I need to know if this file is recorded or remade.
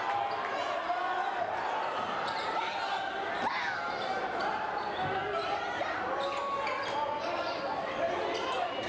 recorded